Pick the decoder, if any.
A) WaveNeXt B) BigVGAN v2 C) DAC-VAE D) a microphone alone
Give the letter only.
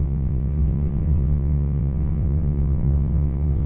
A